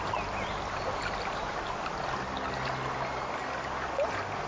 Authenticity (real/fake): real